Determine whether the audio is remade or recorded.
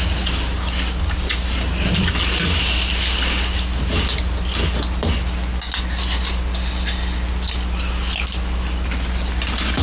recorded